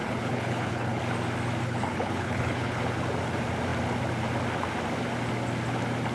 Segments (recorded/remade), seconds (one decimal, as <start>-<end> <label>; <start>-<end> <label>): 0.0-1.0 remade; 1.0-1.6 recorded; 1.6-2.8 remade; 2.8-6.1 recorded